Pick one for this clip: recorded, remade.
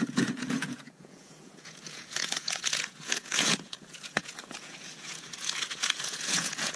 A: remade